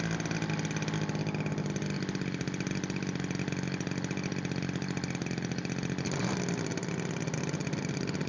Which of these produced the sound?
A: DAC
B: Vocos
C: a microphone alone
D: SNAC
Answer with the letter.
C